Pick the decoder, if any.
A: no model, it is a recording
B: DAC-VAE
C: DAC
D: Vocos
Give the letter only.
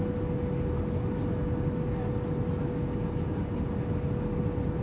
A